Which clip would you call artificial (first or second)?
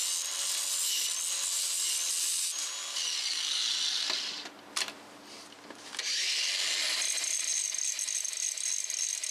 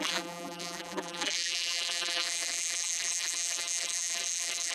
second